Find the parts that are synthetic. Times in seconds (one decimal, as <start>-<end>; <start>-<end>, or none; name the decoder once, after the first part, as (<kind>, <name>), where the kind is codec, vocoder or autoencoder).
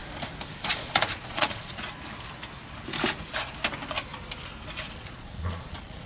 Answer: 0.7-1.8 (vocoder, Vocos); 4.9-6.1